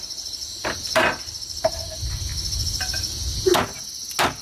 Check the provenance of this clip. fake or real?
real